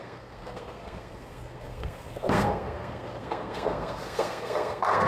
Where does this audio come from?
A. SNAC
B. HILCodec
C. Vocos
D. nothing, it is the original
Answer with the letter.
A